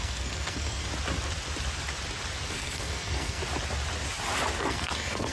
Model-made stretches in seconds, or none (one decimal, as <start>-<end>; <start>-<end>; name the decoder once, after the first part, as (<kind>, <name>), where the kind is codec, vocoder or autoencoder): 0.0-0.9 (codec, SNAC); 2.5-3.4; 4.6-5.3